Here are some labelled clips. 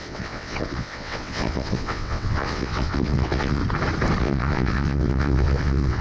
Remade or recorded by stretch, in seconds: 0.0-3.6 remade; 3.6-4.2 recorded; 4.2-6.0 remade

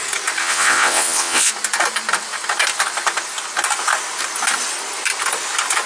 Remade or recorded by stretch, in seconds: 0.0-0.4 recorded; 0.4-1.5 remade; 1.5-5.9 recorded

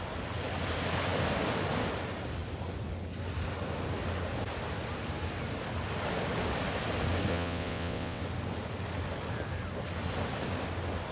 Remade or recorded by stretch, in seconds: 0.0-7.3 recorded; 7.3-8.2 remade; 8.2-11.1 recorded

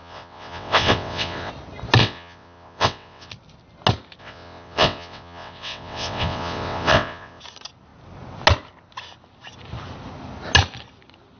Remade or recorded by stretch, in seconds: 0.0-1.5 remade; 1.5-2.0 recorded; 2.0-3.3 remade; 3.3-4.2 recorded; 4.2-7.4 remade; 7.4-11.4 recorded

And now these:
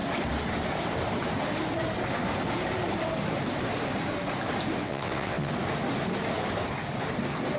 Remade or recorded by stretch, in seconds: 0.0-4.8 recorded; 4.8-5.5 remade; 5.5-7.6 recorded